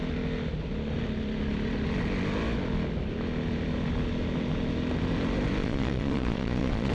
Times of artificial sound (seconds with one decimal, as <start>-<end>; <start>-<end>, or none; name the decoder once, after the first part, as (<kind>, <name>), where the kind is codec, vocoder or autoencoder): 5.6-6.9 (vocoder, Vocos)